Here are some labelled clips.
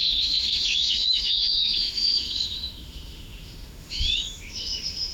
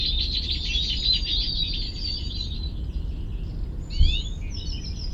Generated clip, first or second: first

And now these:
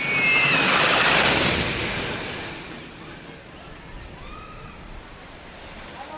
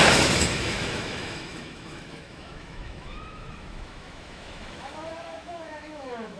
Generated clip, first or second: second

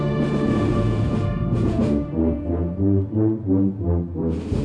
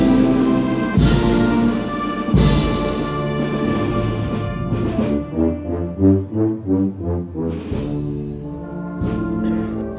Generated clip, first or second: first